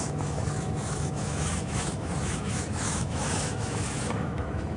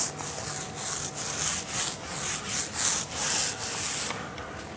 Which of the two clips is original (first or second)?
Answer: second